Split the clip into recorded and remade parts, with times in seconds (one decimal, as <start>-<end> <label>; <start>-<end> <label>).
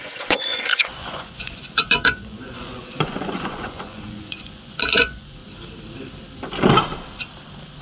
0.0-5.4 remade; 5.4-7.8 recorded